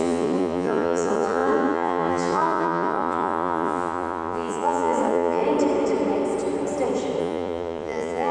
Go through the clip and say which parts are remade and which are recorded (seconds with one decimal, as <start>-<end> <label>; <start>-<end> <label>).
0.0-5.4 remade; 5.4-7.2 recorded; 7.2-8.3 remade